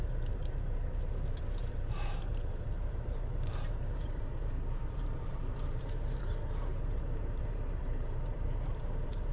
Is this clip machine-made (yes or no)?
yes